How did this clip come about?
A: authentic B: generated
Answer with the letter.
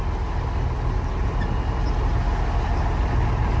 A